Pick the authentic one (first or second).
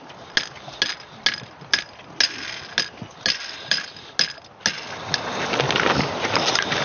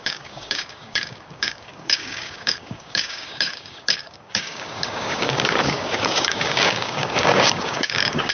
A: first